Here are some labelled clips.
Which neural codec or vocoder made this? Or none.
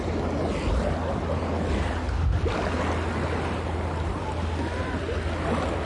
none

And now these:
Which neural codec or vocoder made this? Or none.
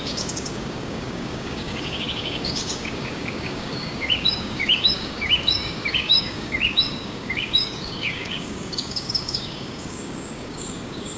codec, DAC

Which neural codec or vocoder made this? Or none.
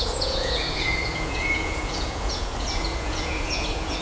vocoder, Vocos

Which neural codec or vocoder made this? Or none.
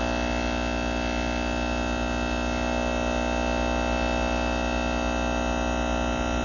none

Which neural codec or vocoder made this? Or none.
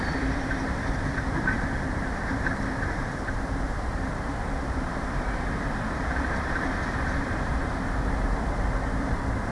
vocoder, BigVGAN v2